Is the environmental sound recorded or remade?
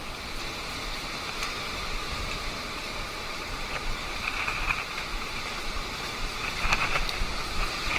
remade